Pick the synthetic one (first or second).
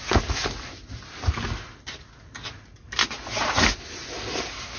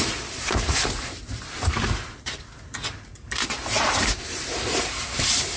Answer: second